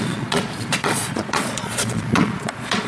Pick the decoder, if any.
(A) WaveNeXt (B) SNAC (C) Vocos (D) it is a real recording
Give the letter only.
C